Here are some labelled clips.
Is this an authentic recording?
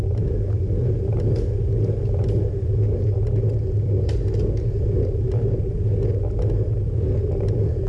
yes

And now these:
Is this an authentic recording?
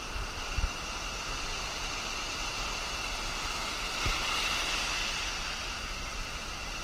yes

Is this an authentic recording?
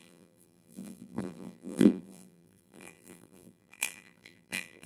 no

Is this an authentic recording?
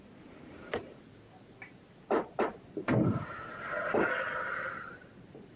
no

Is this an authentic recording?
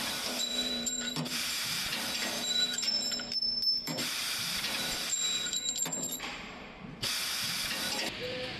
no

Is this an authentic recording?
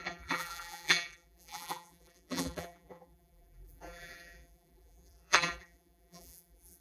no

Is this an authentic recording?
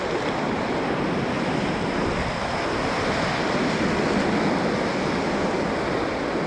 yes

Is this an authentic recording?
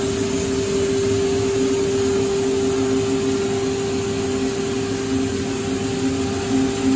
yes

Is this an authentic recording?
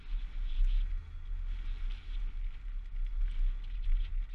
yes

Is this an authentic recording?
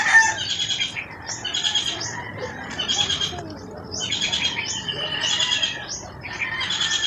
no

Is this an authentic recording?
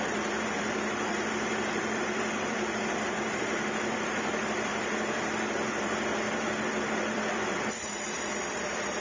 no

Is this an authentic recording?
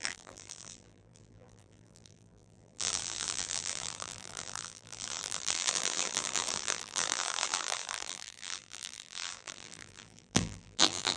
no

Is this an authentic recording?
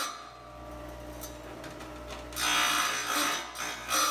yes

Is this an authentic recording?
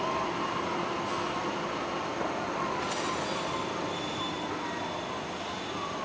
yes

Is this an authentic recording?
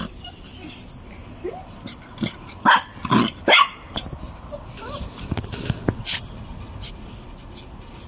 yes